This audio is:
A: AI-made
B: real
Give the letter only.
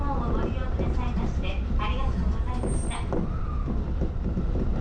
B